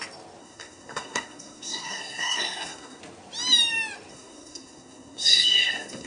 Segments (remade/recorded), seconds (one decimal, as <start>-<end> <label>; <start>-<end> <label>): 0.0-0.4 recorded; 0.4-3.0 remade; 3.0-4.1 recorded; 4.1-6.1 remade